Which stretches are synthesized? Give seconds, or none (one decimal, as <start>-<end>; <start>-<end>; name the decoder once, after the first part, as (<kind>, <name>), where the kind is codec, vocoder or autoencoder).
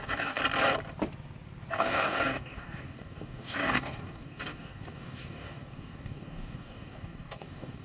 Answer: 0.0-0.4 (codec, DAC); 1.7-7.8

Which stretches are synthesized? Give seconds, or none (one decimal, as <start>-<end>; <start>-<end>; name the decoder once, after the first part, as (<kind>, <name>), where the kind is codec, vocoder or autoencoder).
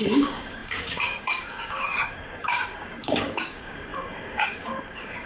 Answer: 0.0-5.3 (codec, DAC)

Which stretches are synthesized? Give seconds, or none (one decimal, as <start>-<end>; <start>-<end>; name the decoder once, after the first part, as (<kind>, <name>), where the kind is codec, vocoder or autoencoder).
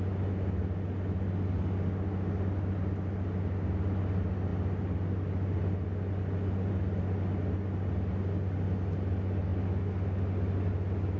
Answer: none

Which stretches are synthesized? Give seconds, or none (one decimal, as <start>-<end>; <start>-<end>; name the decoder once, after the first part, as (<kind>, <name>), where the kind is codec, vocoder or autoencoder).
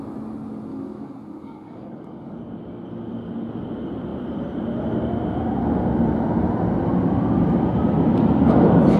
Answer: 0.7-2.4 (codec, DAC)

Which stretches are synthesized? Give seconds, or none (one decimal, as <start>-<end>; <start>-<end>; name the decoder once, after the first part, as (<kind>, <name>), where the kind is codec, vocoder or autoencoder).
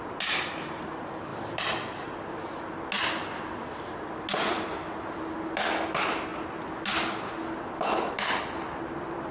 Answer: none